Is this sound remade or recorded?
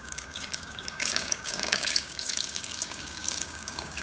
remade